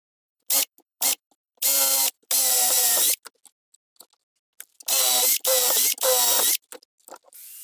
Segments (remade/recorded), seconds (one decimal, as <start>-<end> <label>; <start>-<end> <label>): 0.0-7.6 recorded